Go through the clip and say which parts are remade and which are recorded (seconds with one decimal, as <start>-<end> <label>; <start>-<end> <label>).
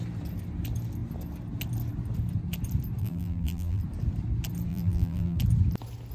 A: 0.0-3.0 recorded; 3.0-3.8 remade; 3.8-4.7 recorded; 4.7-5.4 remade; 5.4-6.1 recorded